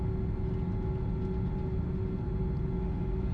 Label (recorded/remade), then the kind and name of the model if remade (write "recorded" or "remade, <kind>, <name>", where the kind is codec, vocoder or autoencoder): recorded